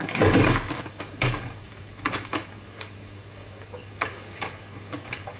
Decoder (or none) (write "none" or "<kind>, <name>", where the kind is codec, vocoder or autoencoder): codec, DAC